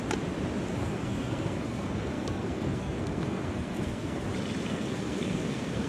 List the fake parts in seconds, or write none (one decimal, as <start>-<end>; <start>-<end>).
0.7-4.2; 4.7-5.9